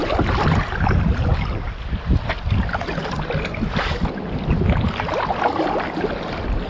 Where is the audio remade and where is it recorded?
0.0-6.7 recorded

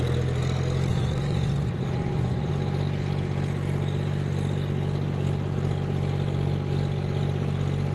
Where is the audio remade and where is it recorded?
0.0-0.9 recorded; 0.9-2.5 remade; 2.5-7.9 recorded

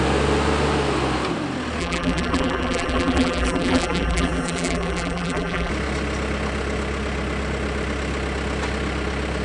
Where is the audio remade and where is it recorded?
0.0-1.8 recorded; 1.8-5.7 remade; 5.7-9.4 recorded

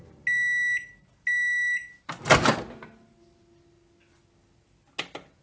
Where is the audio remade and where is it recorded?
0.0-5.4 recorded

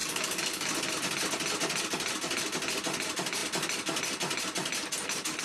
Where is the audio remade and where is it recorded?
0.0-0.7 remade; 0.7-5.4 recorded

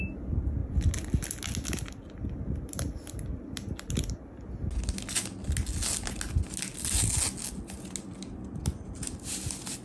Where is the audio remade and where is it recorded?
0.0-9.8 recorded